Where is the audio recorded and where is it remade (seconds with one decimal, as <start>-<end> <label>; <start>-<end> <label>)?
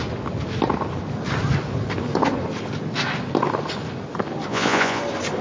0.0-4.5 recorded; 4.5-5.0 remade; 5.0-5.4 recorded